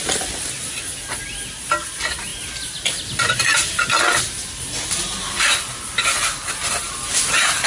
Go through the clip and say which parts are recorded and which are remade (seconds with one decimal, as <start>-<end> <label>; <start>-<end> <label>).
0.0-7.7 recorded